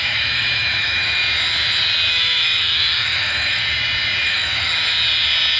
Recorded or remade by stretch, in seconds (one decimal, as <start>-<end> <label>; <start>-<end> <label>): 0.0-1.2 remade; 1.2-2.1 recorded; 2.1-3.6 remade; 3.6-4.2 recorded; 4.2-4.7 remade; 4.7-5.6 recorded